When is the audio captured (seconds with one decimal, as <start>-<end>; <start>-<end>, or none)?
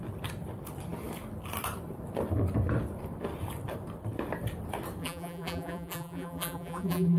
0.0-5.0